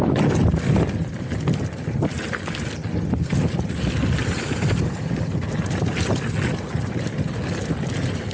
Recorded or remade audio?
recorded